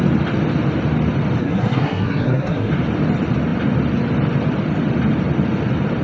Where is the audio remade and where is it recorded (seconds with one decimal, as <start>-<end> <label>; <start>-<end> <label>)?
0.0-1.4 recorded; 1.4-2.7 remade; 2.7-6.0 recorded